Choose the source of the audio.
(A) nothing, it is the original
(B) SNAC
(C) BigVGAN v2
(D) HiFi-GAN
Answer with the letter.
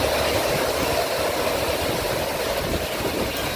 A